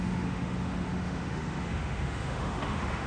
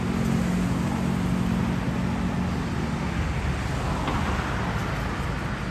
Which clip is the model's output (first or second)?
first